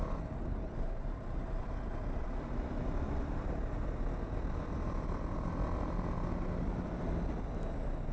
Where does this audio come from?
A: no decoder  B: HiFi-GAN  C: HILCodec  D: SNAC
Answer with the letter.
A